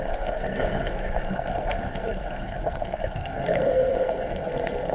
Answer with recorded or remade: remade